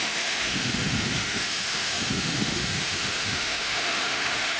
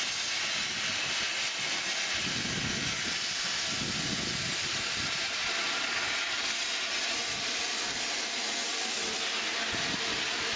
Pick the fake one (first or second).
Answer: first